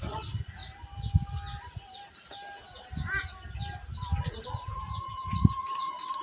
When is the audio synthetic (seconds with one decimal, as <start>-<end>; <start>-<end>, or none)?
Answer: 0.0-0.6; 4.3-6.2